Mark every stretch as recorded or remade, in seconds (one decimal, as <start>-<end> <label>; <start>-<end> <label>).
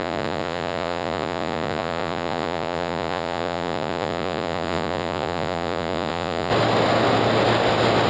0.0-6.5 remade; 6.5-8.1 recorded